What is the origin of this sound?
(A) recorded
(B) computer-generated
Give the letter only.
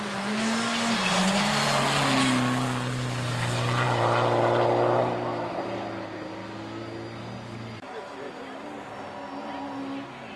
A